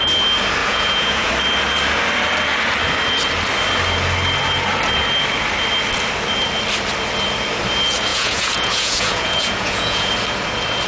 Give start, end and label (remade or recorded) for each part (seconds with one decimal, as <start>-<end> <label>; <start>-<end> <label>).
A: 0.0-0.6 recorded; 0.6-1.3 remade; 1.3-8.1 recorded; 8.1-10.1 remade; 10.1-10.9 recorded